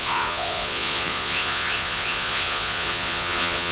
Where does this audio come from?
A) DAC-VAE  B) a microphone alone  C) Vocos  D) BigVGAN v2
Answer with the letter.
C